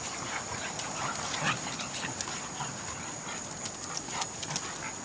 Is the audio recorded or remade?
recorded